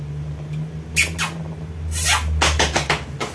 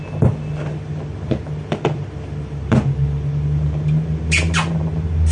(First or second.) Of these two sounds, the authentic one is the first